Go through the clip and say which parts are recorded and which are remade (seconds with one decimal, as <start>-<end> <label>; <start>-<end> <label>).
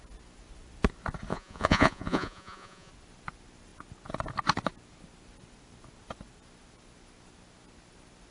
0.0-1.3 recorded; 1.3-2.9 remade; 2.9-8.3 recorded